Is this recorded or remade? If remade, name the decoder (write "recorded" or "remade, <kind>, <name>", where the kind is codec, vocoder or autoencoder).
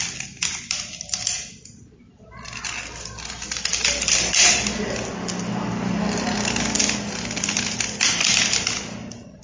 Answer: recorded